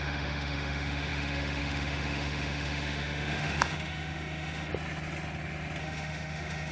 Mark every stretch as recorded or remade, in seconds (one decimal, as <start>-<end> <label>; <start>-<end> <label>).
0.0-4.7 remade; 4.7-5.8 recorded; 5.8-6.7 remade